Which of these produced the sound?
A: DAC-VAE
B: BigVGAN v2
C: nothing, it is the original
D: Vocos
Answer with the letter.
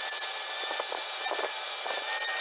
C